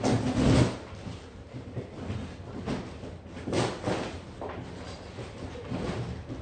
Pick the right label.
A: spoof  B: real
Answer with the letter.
B